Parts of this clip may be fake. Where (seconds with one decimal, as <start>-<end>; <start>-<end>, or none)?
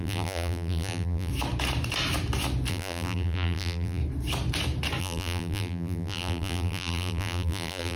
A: 0.0-1.3; 2.7-4.0; 5.0-8.0